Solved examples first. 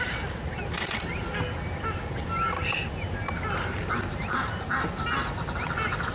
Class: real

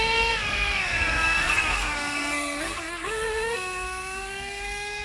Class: fake